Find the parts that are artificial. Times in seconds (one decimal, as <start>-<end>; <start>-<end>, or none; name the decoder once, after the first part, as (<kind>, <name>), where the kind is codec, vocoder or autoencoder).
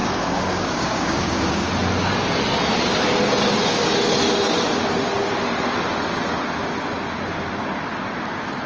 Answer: 0.0-1.7 (codec, DAC)